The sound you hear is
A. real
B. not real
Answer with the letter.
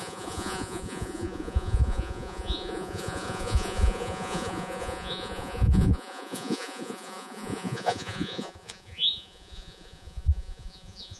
B